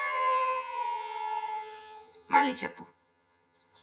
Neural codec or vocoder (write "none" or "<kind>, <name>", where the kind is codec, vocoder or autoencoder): vocoder, HiFi-GAN